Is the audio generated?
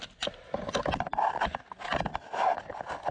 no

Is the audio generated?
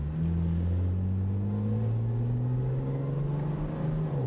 no